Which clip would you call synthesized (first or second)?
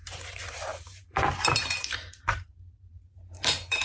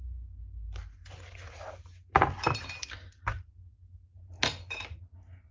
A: first